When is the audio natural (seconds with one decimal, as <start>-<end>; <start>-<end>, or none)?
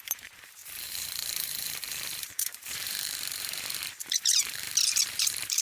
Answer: none